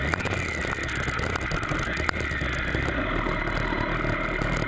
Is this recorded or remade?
recorded